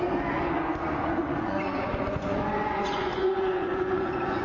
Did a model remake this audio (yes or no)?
yes